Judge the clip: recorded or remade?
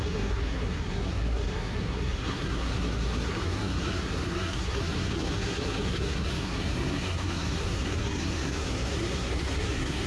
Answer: remade